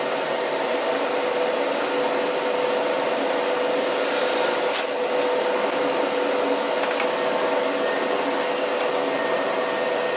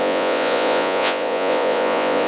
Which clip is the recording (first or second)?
first